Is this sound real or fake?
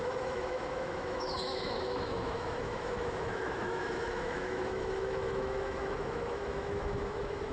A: fake